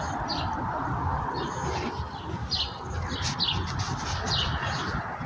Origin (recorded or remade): recorded